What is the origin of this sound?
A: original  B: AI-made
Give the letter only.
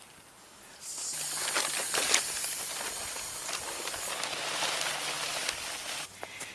A